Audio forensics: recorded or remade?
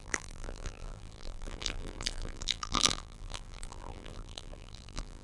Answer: remade